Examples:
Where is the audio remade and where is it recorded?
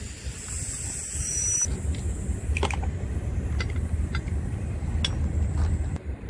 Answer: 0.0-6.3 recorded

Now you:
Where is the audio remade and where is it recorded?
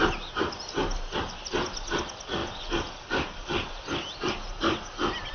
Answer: 0.0-5.3 recorded